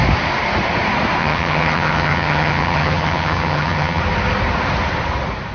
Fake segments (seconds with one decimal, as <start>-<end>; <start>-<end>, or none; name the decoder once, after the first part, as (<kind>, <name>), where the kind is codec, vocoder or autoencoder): 1.2-4.0 (vocoder, HiFi-GAN)